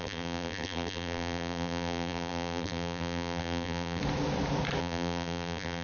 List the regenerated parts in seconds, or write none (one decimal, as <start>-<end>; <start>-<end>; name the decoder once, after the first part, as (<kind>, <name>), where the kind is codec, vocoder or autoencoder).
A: 0.0-4.0 (vocoder, BigVGAN v2); 4.8-5.8